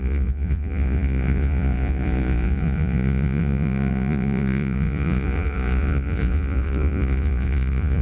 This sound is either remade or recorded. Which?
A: remade